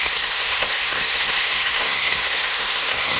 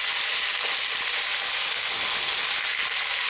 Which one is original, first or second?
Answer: second